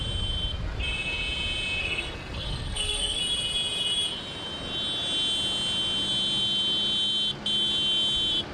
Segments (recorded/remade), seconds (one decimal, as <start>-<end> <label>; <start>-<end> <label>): 0.0-1.8 recorded; 1.8-3.2 remade; 3.2-8.5 recorded